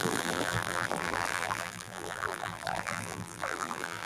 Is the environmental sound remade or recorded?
remade